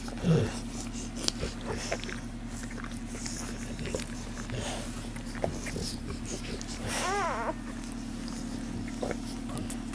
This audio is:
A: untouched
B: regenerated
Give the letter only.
A